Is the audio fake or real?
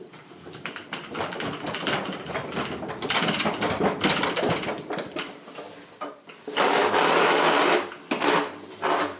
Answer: fake